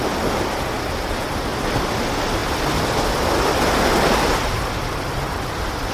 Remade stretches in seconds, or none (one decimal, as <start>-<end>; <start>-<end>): 1.5-2.0; 2.4-5.9